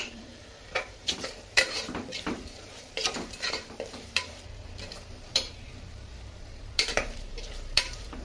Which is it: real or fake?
fake